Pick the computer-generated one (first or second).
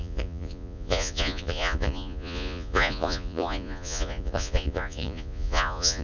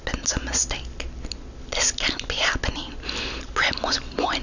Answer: first